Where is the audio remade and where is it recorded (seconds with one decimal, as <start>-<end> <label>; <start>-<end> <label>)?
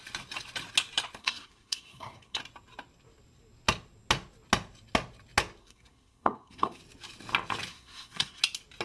0.0-1.2 recorded; 1.2-2.4 remade; 2.4-5.6 recorded; 5.6-6.8 remade; 6.8-7.7 recorded; 7.7-8.4 remade; 8.4-8.8 recorded